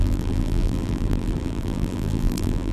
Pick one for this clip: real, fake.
fake